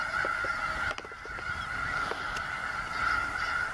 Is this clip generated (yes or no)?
no